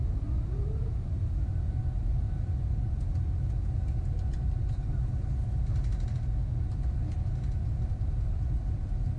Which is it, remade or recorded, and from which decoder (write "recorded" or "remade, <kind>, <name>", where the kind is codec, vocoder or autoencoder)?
recorded